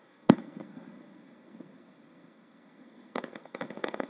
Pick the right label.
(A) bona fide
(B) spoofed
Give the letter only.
B